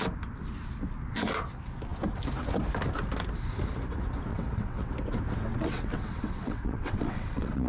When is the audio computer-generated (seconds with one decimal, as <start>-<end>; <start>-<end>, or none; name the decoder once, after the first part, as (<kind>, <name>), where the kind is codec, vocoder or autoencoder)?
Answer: 4.3-4.9 (vocoder, WaveNeXt); 5.5-7.7